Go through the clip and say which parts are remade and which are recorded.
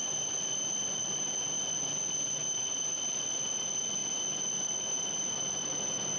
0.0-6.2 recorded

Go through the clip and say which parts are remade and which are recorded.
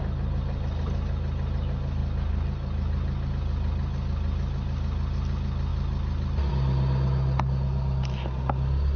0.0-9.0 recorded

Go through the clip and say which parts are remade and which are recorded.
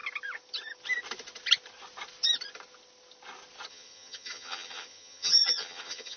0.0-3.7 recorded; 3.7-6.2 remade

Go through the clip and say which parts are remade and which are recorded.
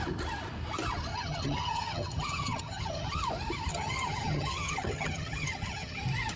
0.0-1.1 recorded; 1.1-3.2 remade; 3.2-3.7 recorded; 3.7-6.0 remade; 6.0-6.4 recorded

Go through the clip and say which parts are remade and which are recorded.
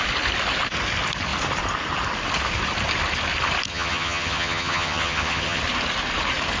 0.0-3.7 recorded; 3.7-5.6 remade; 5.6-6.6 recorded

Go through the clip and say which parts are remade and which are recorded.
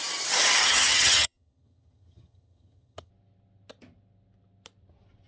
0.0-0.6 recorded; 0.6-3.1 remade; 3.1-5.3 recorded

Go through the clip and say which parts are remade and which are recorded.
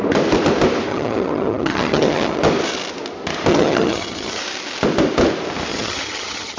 0.0-0.9 recorded; 0.9-2.4 remade; 2.4-3.5 recorded; 3.5-4.4 remade; 4.4-5.7 recorded; 5.7-6.6 remade